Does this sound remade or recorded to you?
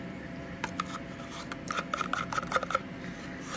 recorded